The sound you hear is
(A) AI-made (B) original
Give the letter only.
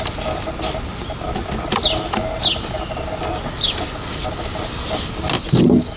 B